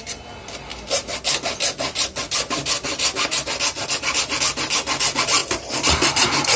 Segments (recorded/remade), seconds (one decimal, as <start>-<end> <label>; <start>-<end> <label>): 0.0-5.4 recorded; 5.4-6.6 remade